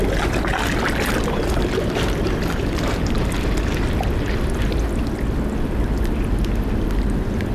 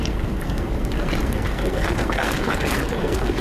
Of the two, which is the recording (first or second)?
first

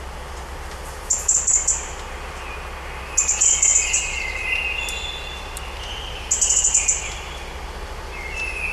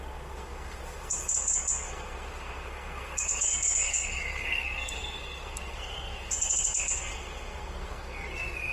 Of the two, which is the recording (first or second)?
first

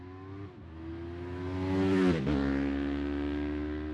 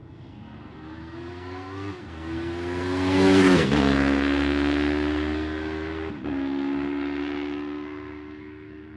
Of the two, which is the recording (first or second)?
first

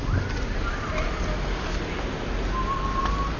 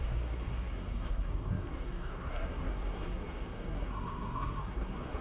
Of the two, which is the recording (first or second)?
first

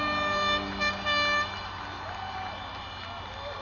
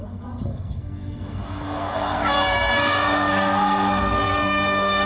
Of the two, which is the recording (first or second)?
first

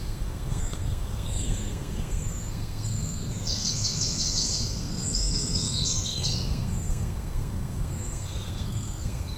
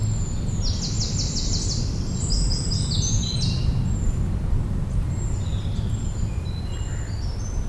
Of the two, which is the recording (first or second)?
second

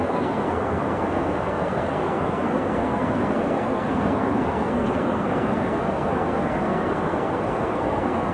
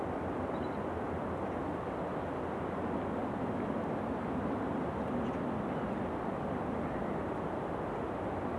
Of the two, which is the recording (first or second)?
second